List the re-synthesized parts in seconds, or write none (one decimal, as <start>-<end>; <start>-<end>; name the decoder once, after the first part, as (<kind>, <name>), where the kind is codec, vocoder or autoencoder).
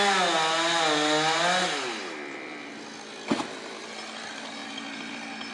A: none